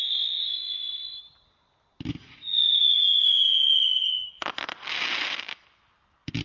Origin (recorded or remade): recorded